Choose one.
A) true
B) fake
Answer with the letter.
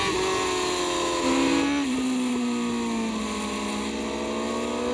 A